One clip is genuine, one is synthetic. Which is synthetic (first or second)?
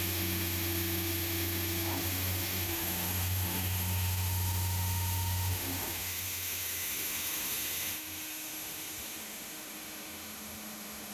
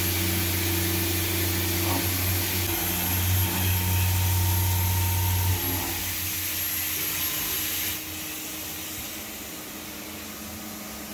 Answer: first